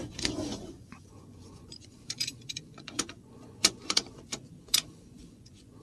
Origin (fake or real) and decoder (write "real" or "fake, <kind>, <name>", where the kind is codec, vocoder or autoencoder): fake, vocoder, Vocos